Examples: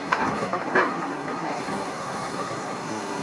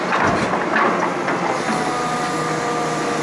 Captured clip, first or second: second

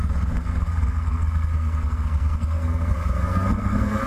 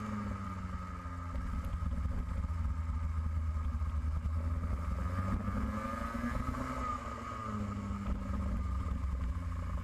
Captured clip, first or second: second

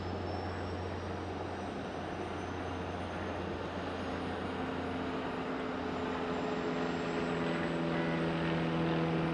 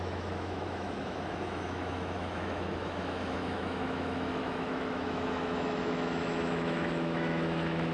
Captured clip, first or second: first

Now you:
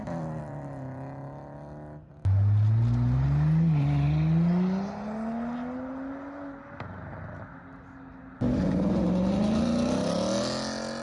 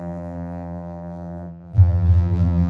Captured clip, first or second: first